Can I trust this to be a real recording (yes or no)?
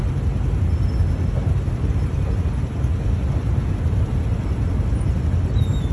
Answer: yes